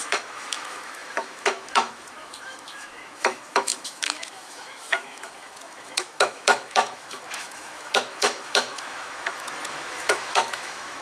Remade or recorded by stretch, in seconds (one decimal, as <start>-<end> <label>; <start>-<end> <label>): 0.0-11.0 remade